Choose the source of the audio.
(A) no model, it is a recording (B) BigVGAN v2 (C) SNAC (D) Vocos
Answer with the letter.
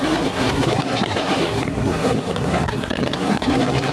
C